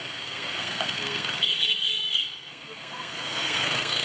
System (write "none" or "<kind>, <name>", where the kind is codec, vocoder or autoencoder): codec, SNAC